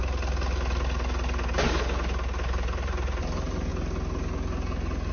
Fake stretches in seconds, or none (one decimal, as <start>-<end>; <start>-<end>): 2.5-3.7